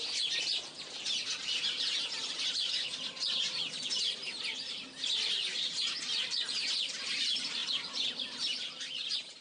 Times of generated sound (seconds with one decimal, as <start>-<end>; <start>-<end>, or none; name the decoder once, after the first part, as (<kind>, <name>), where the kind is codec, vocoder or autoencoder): none